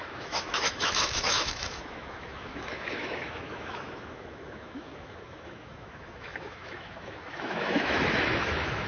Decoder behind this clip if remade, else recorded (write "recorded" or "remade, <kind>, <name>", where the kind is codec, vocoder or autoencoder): remade, autoencoder, DAC-VAE